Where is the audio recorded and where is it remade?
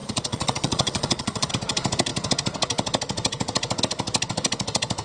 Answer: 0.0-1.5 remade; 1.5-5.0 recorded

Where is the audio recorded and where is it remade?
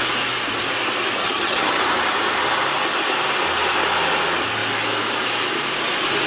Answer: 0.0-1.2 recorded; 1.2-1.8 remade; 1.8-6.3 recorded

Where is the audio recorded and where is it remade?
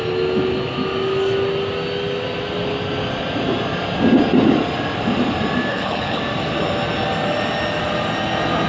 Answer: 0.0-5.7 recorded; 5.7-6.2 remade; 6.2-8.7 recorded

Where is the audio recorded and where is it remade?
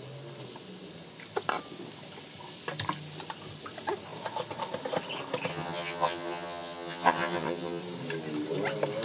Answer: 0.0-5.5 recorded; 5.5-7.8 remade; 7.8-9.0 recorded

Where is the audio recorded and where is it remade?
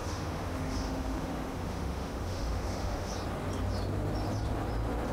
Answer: 0.0-3.1 remade; 3.1-5.1 recorded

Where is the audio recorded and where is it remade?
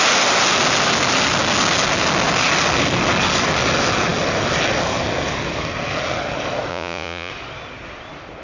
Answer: 0.0-6.7 recorded; 6.7-7.3 remade; 7.3-8.4 recorded